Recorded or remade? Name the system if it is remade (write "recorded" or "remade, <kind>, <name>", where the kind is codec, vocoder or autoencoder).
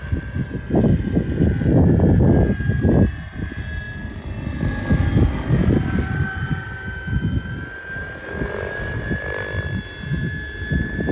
recorded